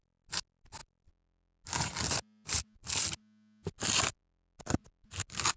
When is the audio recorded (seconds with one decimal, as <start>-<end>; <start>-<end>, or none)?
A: 0.0-5.6